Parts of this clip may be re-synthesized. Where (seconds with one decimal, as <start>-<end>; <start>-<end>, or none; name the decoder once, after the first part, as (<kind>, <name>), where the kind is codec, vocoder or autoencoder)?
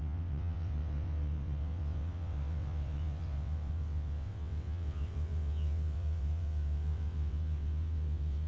0.0-8.5 (vocoder, WaveNeXt)